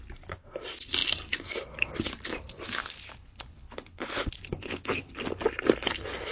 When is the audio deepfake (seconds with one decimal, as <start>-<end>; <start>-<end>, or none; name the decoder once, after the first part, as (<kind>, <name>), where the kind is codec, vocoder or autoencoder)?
2.8-5.1 (codec, HILCodec)